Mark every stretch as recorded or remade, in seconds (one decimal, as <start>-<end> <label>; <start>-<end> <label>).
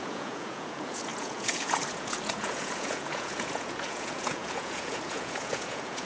0.0-6.1 remade